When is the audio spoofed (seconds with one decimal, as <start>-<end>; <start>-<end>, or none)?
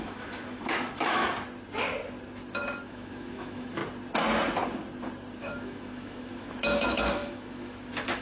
0.0-1.2; 2.9-3.8; 5.4-8.2